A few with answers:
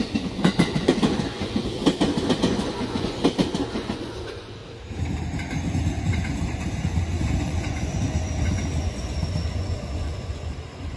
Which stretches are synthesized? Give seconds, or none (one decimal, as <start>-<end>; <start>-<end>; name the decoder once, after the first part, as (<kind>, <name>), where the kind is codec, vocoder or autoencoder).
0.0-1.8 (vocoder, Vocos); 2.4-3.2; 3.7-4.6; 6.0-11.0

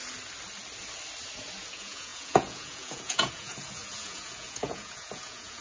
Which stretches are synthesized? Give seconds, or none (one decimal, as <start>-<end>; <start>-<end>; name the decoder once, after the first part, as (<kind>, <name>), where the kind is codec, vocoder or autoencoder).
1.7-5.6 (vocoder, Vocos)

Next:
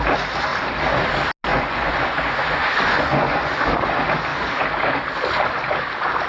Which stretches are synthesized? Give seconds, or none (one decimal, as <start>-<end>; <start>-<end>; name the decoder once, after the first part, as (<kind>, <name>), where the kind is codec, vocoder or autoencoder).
1.5-3.7 (vocoder, Vocos)

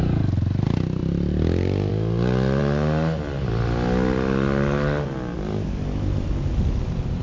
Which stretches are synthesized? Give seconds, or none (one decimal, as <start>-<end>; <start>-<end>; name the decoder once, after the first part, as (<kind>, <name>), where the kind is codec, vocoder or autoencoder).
none

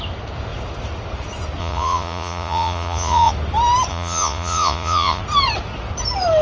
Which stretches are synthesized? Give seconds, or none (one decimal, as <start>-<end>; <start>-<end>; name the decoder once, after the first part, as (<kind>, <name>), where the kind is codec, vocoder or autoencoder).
1.6-3.3 (vocoder, Vocos); 3.9-5.2

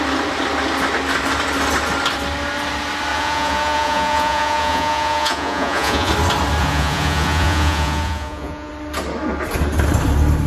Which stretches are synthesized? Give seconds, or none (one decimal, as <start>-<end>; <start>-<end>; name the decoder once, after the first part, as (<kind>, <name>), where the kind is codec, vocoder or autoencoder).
3.1-6.1 (vocoder, Vocos); 6.6-8.7

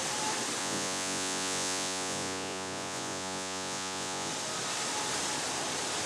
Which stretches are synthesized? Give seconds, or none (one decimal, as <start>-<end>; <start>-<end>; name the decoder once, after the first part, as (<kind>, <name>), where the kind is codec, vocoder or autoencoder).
0.6-4.3 (vocoder, Vocos)

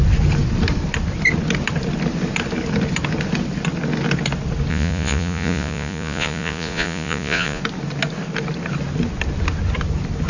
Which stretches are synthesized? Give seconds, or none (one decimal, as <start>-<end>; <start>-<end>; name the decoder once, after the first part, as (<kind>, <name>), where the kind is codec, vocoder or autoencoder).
4.7-7.6 (vocoder, Vocos)